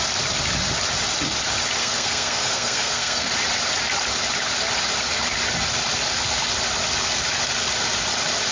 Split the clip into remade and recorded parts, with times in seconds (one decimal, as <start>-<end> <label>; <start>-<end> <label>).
0.0-1.8 recorded; 1.8-3.3 remade; 3.3-8.5 recorded